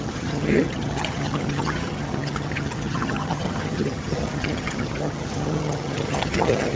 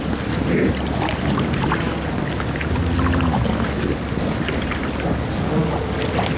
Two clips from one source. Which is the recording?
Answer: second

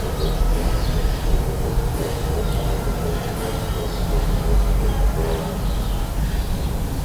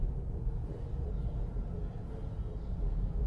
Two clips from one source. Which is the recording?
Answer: first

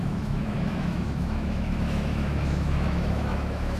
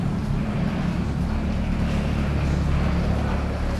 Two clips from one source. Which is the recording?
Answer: second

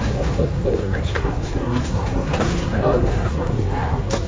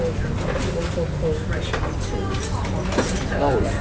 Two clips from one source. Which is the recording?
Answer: second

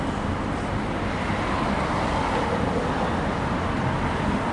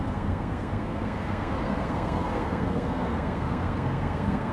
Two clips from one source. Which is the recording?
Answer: first